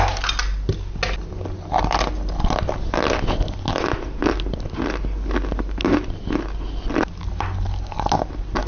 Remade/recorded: recorded